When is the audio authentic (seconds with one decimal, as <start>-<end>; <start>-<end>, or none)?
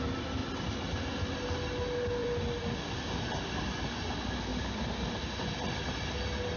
0.0-2.2; 3.4-6.6